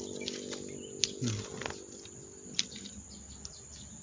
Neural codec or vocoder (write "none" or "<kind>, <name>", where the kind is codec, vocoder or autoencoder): none